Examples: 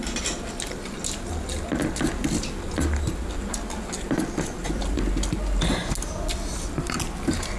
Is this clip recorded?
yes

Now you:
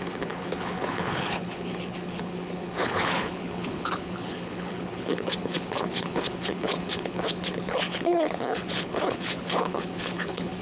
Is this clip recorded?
no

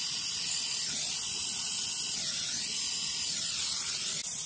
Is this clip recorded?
yes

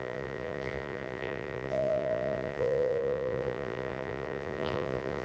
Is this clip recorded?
no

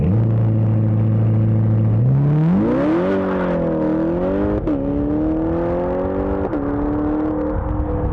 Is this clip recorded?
yes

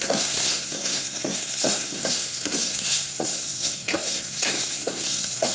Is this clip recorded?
no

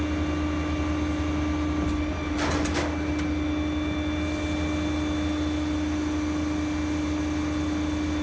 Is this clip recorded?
yes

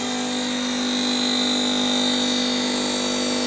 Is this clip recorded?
yes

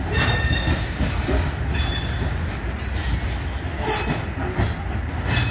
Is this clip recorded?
yes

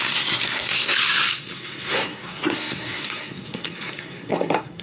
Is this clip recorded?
no